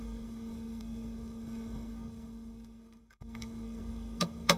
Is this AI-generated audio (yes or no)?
yes